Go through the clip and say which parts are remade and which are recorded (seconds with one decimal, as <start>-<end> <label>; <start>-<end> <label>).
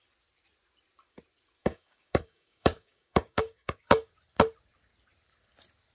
0.0-1.6 recorded; 1.6-4.1 remade; 4.1-5.9 recorded